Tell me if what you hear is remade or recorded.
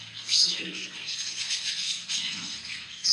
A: remade